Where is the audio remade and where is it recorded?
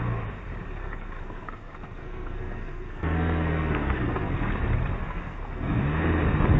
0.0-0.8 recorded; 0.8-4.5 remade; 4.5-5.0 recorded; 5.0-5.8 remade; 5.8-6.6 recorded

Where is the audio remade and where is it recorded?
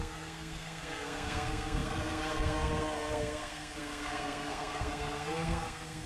0.0-6.1 remade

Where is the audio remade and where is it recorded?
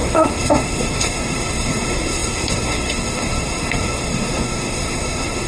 0.0-5.5 remade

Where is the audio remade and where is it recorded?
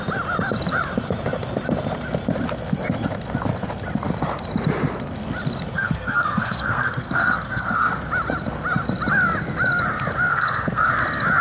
0.0-5.7 recorded; 5.7-7.9 remade; 7.9-10.3 recorded; 10.3-10.9 remade; 10.9-11.4 recorded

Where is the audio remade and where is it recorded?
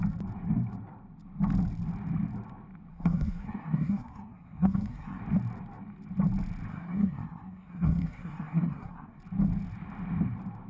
0.0-2.9 recorded; 2.9-5.2 remade; 5.2-6.7 recorded; 6.7-9.2 remade; 9.2-10.7 recorded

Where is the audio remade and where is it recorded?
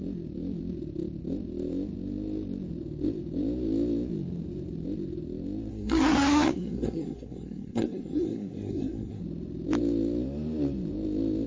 0.0-5.7 recorded; 5.7-9.2 remade; 9.2-11.5 recorded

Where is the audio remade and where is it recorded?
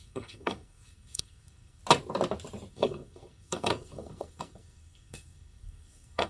0.0-1.8 remade; 1.8-2.7 recorded; 2.7-6.3 remade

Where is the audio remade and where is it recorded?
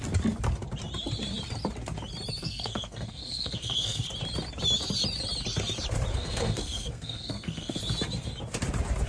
0.0-2.4 recorded; 2.4-4.0 remade; 4.0-6.1 recorded; 6.1-7.8 remade; 7.8-9.1 recorded